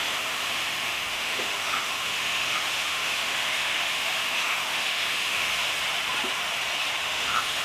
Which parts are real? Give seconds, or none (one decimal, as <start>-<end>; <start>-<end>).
5.5-7.0